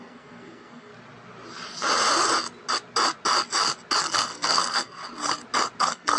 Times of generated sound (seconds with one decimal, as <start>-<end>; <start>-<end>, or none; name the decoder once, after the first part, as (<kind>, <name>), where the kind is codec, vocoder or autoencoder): 0.0-0.9 (codec, SNAC); 4.0-5.0; 5.8-6.2

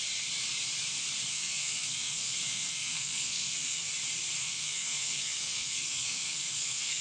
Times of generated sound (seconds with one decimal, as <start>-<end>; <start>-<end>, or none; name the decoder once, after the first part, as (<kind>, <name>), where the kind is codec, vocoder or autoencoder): 1.3-3.9 (codec, SNAC); 4.4-7.0